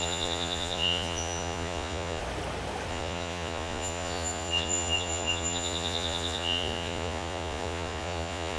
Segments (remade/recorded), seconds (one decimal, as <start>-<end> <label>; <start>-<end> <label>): 0.0-2.2 remade; 2.2-2.9 recorded; 2.9-8.6 remade